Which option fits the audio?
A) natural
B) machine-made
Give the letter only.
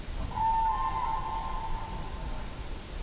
A